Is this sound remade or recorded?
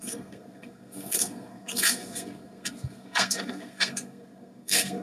remade